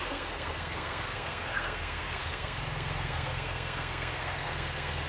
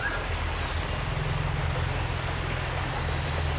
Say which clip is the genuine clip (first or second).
second